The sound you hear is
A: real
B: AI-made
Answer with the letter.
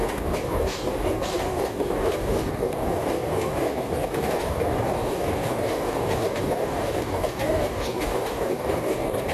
B